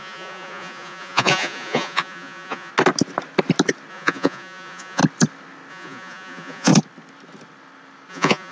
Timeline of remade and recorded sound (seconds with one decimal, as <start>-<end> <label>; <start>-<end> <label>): 0.0-2.7 remade; 2.7-3.9 recorded; 3.9-5.0 remade; 5.0-5.7 recorded; 5.7-6.7 remade; 6.7-8.1 recorded; 8.1-8.5 remade